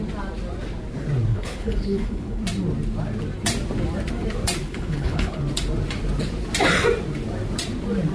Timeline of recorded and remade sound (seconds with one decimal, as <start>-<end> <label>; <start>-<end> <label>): 0.0-1.3 recorded; 1.3-2.4 remade; 2.4-4.6 recorded; 4.6-5.4 remade; 5.4-8.1 recorded